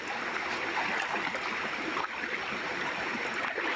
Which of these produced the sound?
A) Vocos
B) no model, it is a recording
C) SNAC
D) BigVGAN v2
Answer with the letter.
B